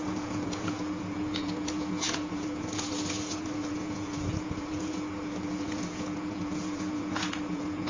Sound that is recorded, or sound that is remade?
remade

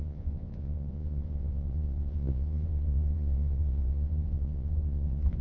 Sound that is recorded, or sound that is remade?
remade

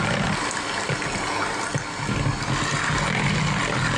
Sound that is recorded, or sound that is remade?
recorded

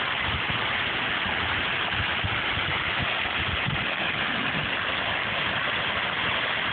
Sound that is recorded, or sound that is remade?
recorded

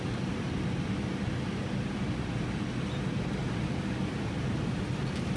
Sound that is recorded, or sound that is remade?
recorded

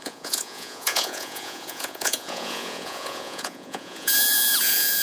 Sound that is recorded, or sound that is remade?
remade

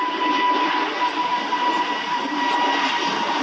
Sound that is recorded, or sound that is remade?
recorded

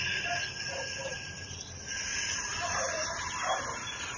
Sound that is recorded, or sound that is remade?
recorded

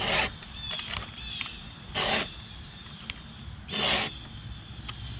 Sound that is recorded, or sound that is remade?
recorded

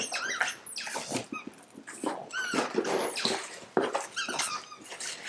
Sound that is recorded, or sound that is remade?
recorded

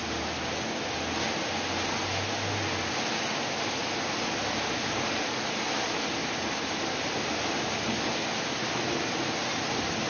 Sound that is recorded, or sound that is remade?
recorded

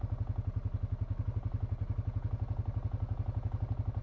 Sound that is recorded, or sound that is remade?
recorded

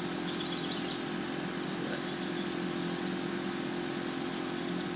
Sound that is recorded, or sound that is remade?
recorded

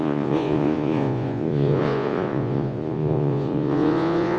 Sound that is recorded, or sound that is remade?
remade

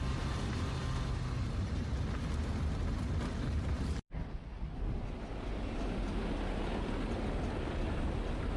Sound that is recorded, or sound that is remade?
recorded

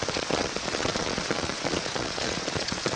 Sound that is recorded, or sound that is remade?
remade